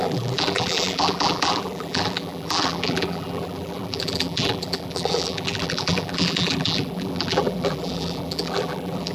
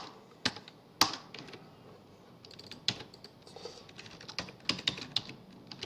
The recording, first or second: second